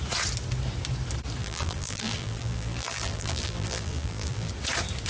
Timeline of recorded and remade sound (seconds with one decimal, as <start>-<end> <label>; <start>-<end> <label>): 0.0-1.4 recorded; 1.4-4.5 remade; 4.5-5.1 recorded